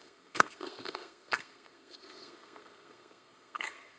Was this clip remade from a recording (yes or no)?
yes